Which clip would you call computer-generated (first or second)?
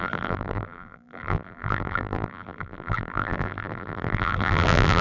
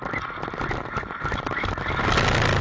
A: first